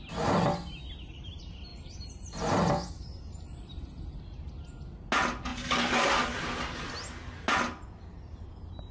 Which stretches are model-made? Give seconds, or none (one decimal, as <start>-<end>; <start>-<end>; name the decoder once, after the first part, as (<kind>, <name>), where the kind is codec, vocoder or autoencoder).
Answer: none